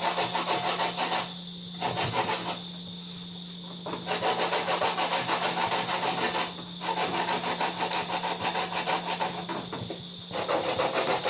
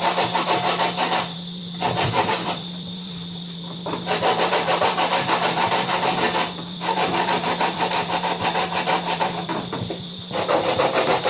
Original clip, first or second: first